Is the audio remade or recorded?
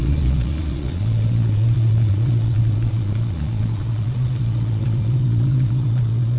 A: remade